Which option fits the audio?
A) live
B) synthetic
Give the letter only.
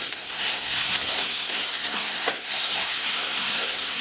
B